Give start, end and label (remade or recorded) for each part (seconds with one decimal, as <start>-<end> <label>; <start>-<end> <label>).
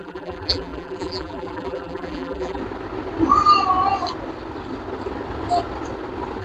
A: 0.0-2.6 remade; 2.6-6.4 recorded